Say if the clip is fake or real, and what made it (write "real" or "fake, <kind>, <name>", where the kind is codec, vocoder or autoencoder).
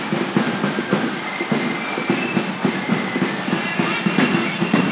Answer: real